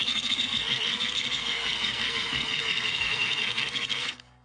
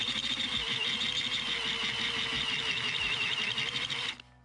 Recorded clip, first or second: second